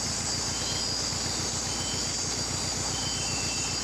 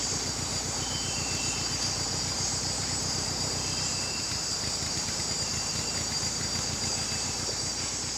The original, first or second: first